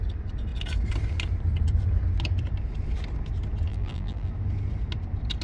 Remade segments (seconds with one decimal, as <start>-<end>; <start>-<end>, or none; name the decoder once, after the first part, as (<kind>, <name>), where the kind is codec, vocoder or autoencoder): 3.7-4.3 (vocoder, BigVGAN v2)